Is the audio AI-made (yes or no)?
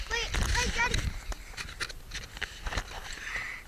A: no